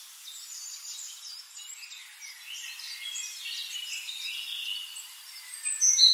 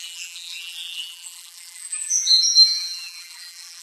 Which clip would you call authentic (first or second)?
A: first